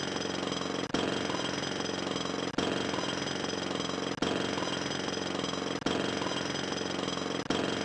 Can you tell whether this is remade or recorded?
recorded